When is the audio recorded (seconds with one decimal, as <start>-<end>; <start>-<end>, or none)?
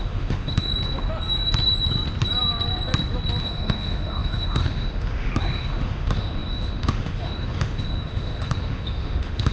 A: 0.7-3.4